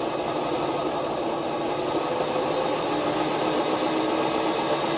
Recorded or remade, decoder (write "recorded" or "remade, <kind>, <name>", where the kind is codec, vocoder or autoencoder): recorded